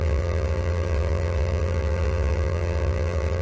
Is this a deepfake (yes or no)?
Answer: yes